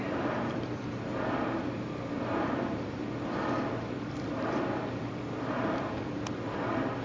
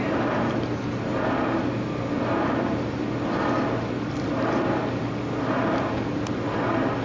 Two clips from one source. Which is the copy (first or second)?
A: first